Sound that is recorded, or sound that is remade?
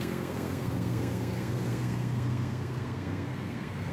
remade